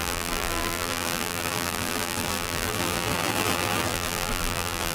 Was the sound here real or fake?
fake